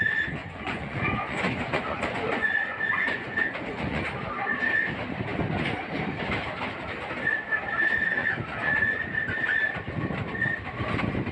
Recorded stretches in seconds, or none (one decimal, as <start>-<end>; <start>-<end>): 0.0-0.4; 4.0-8.2; 9.1-11.3